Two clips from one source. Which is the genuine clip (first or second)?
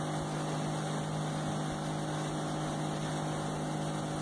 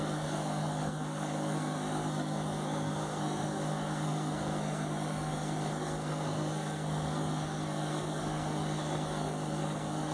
first